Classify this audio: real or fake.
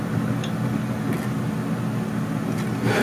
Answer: real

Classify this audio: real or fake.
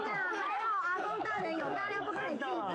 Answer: fake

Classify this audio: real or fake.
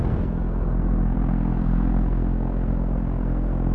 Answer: fake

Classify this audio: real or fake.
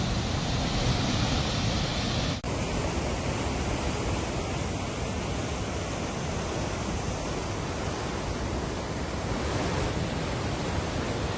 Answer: real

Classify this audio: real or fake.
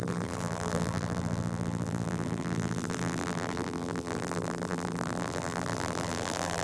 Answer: fake